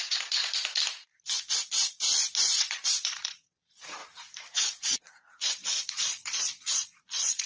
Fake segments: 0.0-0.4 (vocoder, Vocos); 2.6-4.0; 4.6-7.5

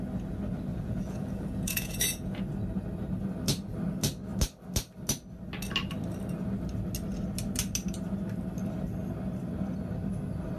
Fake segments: 0.7-2.4 (vocoder, Vocos)

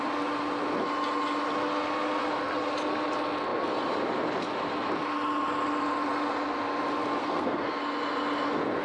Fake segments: 7.2-7.8 (codec, SNAC)